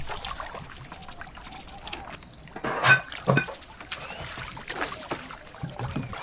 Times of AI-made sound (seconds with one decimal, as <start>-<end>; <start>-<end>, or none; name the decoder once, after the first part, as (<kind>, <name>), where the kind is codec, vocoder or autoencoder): none